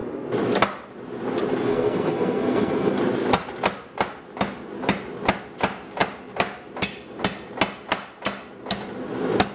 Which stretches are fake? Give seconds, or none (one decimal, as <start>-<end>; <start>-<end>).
1.7-3.0